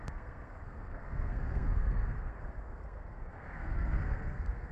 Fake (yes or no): yes